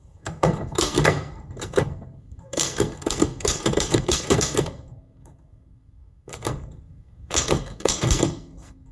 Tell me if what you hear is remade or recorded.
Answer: remade